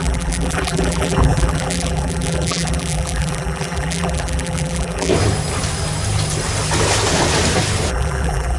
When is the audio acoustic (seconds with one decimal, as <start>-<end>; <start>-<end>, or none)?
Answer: 5.1-7.9